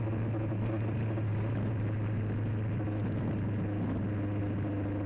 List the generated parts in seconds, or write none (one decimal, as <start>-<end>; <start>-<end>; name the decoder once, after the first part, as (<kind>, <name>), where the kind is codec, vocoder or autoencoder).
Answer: none